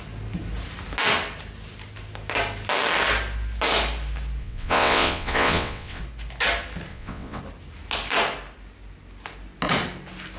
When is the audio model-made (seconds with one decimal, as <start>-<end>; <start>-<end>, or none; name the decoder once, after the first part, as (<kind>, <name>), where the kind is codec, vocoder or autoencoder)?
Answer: 4.4-6.0 (vocoder, WaveNeXt); 6.9-7.4